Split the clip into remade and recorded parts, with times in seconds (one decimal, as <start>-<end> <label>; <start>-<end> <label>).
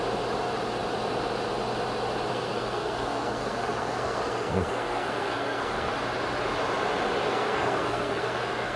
0.0-2.3 recorded; 2.3-5.9 remade; 5.9-7.3 recorded; 7.3-8.8 remade